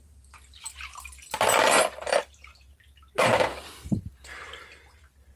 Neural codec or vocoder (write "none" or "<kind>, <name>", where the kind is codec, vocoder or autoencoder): none